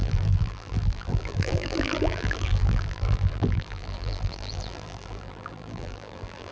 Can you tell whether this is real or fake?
fake